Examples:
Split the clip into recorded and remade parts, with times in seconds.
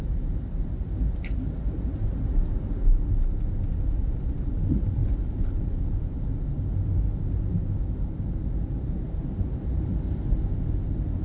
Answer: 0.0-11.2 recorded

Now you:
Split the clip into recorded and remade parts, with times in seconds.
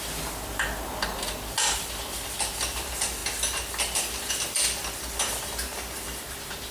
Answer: 0.0-6.7 recorded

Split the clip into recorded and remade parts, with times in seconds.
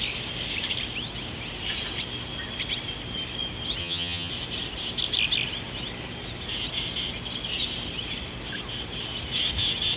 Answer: 0.0-3.8 recorded; 3.8-4.3 remade; 4.3-10.0 recorded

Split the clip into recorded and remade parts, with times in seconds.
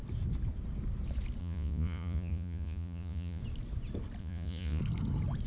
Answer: 0.0-1.4 recorded; 1.4-3.4 remade; 3.4-4.2 recorded; 4.2-4.8 remade; 4.8-5.5 recorded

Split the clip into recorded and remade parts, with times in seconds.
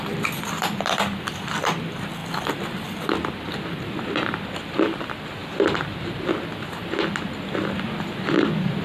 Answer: 0.0-5.4 remade; 5.4-8.8 recorded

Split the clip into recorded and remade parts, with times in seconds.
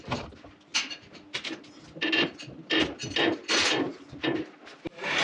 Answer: 0.0-5.2 recorded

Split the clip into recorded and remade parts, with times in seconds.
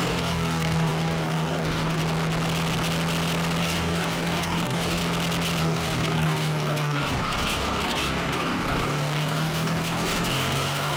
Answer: 0.0-2.0 remade; 2.0-3.6 recorded; 3.6-5.0 remade; 5.0-5.6 recorded; 5.6-11.0 remade